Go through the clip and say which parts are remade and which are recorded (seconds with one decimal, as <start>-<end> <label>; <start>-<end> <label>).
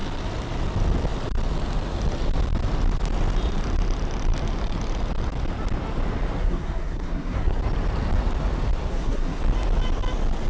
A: 0.0-6.4 recorded; 6.4-7.6 remade; 7.6-8.9 recorded; 8.9-9.4 remade; 9.4-10.5 recorded